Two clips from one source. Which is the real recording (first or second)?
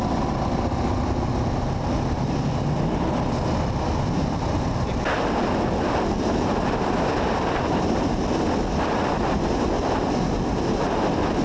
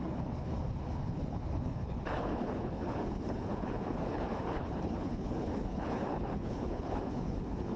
first